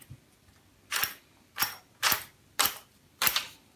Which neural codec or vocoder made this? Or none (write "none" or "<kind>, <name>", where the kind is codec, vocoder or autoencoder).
vocoder, BigVGAN v2